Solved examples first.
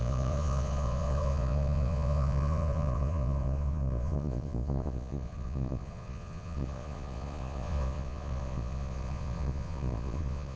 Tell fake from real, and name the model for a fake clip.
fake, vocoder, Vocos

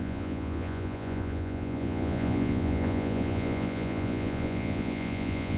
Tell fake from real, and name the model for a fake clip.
fake, vocoder, Vocos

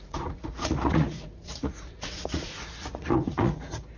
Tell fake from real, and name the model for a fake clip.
fake, vocoder, Vocos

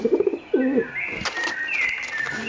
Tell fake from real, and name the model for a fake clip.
real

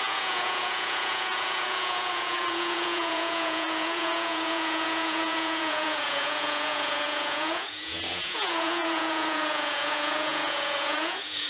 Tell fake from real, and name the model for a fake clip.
fake, vocoder, Vocos